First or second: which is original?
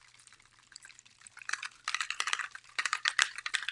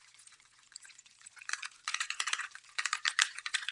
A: first